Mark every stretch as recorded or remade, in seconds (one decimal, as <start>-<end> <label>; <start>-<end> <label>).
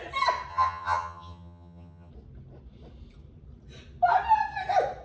0.0-0.5 recorded; 0.5-2.1 remade; 2.1-5.0 recorded